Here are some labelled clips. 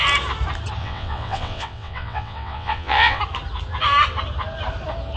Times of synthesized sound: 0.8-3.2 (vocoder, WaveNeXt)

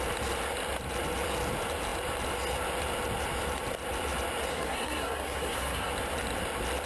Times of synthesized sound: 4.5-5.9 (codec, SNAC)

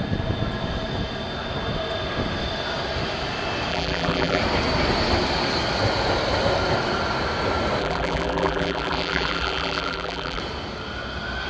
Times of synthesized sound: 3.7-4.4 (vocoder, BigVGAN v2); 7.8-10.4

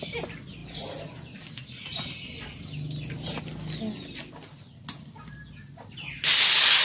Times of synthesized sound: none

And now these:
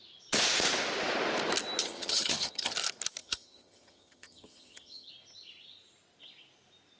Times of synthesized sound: 1.8-2.7 (vocoder, HiFi-GAN); 3.2-5.1